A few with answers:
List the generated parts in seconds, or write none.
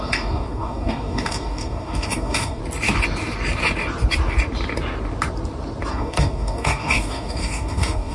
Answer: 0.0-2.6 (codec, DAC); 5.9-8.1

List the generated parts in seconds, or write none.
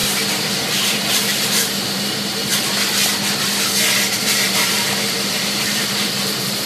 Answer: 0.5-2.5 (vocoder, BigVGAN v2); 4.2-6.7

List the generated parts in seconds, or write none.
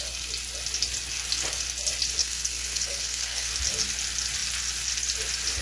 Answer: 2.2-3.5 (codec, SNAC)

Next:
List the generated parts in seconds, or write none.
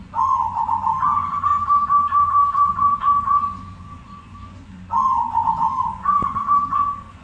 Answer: 0.0-1.5 (vocoder, Vocos); 2.3-7.2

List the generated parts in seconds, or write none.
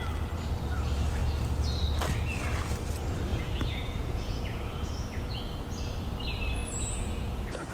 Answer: 3.3-5.4 (vocoder, Vocos); 6.6-7.7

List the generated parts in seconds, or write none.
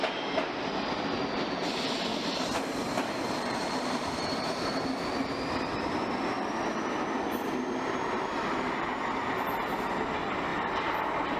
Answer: 2.1-4.8 (vocoder, BigVGAN v2); 10.5-11.0